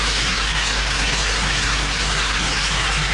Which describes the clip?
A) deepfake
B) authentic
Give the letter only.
A